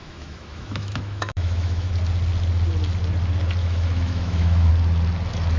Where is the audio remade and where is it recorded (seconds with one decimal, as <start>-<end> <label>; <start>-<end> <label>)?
0.0-1.9 remade; 1.9-3.6 recorded; 3.6-4.7 remade; 4.7-5.6 recorded